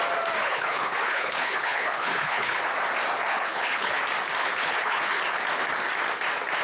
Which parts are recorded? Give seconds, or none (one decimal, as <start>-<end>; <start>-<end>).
0.0-0.4; 2.6-3.3; 4.0-4.4; 5.2-6.6